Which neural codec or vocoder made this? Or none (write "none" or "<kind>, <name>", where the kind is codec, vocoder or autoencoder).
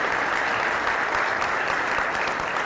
none